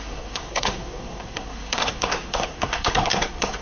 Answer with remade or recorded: remade